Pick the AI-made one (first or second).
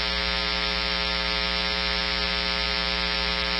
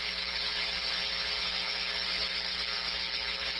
second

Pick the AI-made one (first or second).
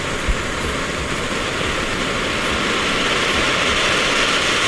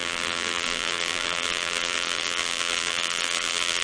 second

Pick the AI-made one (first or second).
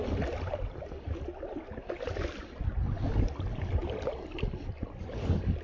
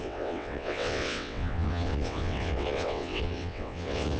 second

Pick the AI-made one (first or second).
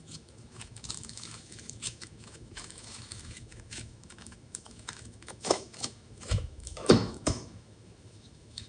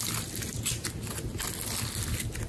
first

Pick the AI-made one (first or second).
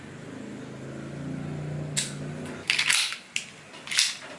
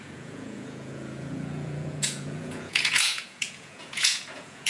second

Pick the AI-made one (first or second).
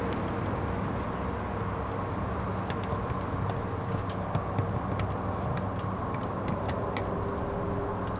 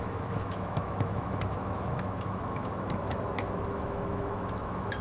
second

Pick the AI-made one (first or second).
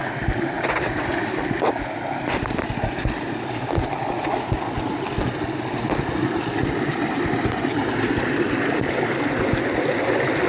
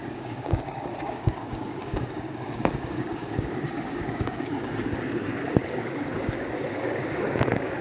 second